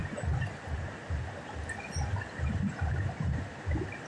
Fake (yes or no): no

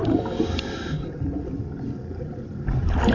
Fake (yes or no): no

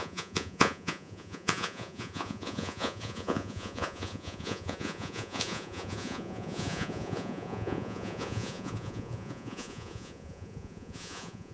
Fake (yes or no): yes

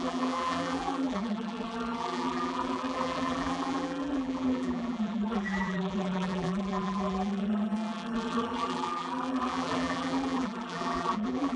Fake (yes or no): yes